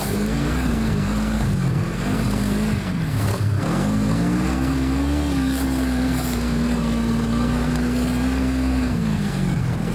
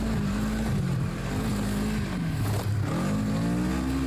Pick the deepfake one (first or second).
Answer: first